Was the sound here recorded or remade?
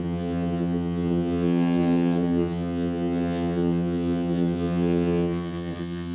remade